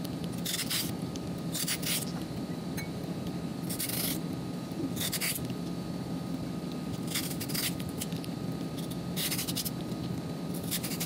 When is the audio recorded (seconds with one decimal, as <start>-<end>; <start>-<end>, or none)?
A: 0.0-11.1

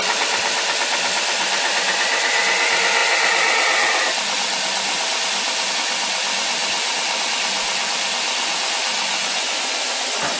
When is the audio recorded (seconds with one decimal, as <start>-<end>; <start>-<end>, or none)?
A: 0.0-9.2

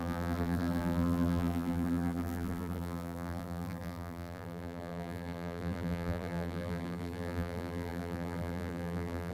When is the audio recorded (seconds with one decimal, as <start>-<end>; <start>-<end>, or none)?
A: none

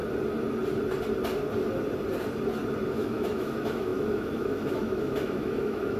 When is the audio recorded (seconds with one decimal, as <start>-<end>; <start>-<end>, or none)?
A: 0.0-2.9